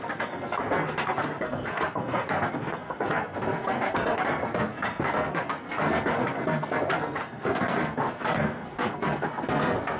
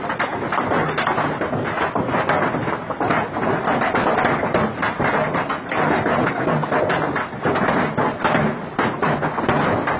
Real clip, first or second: second